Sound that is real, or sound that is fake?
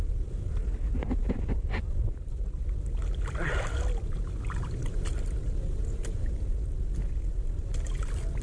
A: real